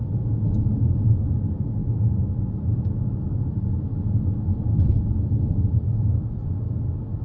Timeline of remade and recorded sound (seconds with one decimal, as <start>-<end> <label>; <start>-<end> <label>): 0.0-1.8 recorded; 1.8-2.5 remade; 2.5-7.2 recorded